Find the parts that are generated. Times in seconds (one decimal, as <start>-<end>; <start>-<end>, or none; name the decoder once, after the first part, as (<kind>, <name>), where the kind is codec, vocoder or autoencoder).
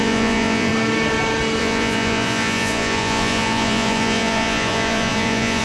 0.0-0.7 (vocoder, Vocos); 1.6-5.6